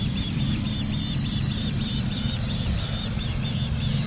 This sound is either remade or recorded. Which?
remade